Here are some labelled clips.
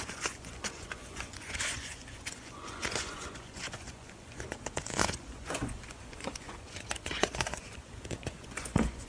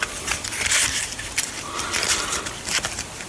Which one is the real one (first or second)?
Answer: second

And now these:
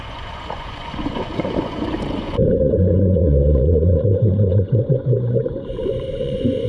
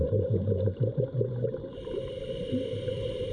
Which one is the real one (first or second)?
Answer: second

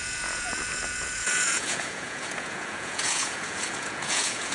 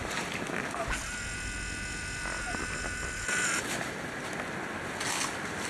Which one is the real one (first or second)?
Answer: second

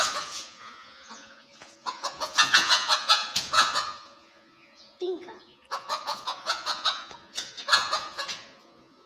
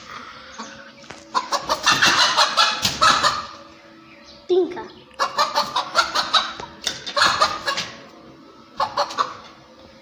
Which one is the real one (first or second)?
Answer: second